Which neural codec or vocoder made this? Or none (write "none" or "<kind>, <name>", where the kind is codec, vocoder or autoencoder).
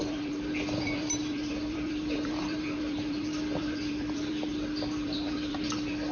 vocoder, BigVGAN v2